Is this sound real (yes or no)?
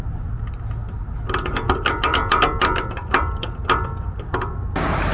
yes